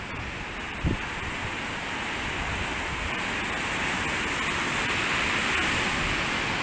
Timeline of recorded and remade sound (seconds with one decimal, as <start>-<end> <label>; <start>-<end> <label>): 0.0-0.7 recorded; 0.7-2.0 remade; 2.0-6.6 recorded